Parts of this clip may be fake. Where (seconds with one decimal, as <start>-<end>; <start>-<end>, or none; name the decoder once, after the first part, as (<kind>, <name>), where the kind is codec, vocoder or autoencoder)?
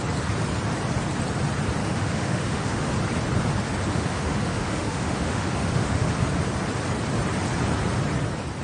1.8-2.9 (autoencoder, DAC-VAE); 3.9-6.1